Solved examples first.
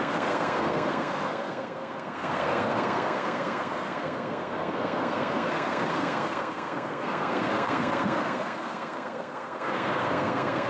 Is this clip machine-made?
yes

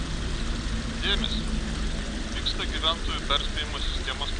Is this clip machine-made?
no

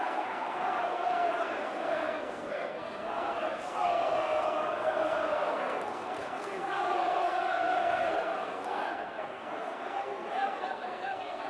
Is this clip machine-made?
yes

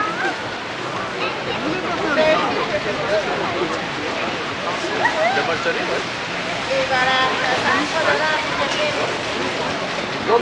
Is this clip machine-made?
no